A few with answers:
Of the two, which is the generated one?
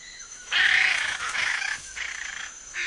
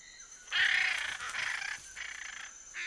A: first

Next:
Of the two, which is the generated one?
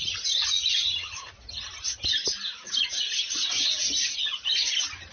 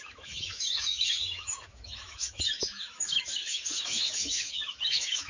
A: second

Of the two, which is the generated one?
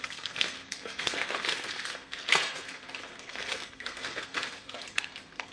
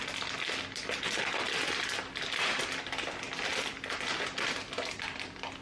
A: first